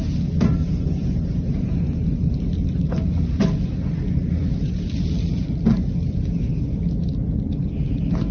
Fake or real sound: real